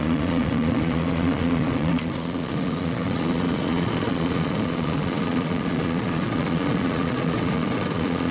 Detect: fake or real fake